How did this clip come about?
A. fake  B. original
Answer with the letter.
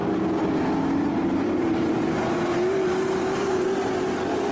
B